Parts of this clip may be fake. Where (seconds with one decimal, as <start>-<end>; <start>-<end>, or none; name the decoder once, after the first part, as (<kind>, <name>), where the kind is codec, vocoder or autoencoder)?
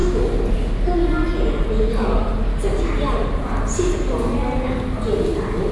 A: none